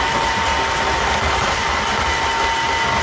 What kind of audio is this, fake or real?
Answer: real